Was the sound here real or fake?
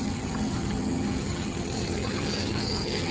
fake